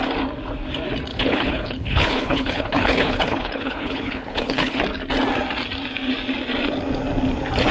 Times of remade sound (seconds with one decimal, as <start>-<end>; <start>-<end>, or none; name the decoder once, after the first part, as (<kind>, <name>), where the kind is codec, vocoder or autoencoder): 1.1-4.8 (codec, HILCodec)